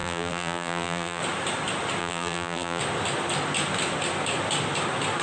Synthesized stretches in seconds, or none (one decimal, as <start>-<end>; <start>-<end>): 0.0-1.2; 2.0-2.8